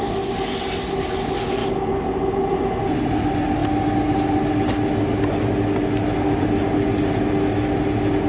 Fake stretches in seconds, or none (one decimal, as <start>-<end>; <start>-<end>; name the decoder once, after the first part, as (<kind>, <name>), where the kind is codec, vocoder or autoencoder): none